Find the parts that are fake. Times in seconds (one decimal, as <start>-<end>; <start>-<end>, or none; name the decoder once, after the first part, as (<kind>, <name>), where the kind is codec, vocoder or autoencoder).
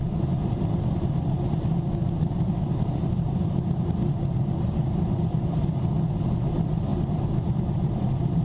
2.0-5.7 (vocoder, BigVGAN v2); 6.9-8.4